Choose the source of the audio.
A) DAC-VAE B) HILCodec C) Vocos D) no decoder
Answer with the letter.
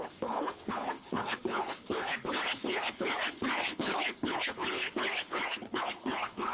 B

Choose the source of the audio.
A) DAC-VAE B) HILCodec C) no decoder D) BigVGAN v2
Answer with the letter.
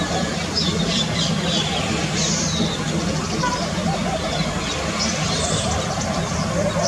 C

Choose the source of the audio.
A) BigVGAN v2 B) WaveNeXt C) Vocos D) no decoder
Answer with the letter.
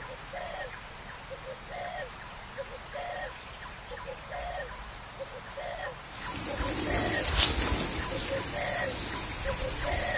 D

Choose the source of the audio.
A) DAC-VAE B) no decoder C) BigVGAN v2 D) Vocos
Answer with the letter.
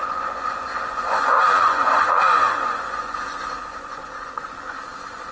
D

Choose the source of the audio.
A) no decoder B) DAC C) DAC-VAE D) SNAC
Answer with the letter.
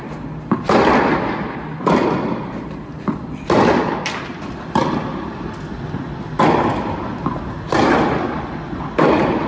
A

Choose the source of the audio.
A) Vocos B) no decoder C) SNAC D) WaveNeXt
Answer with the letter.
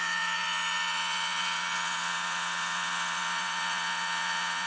A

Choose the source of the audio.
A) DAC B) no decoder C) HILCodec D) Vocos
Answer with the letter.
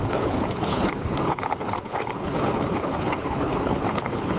C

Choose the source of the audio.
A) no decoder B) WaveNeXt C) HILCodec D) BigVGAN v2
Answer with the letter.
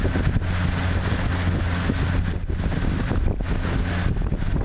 A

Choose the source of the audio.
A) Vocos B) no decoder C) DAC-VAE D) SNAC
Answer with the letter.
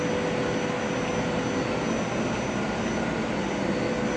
B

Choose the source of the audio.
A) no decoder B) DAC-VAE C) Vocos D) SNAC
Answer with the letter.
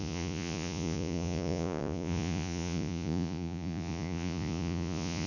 C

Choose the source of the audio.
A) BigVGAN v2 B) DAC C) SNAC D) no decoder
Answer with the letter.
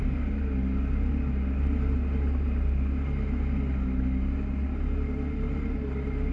D